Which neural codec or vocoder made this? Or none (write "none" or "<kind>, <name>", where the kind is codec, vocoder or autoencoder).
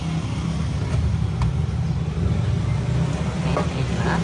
none